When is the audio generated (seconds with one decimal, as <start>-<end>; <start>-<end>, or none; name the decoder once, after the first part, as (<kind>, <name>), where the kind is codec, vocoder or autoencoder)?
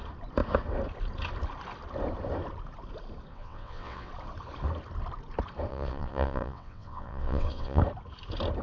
3.3-4.1 (vocoder, WaveNeXt); 5.7-7.8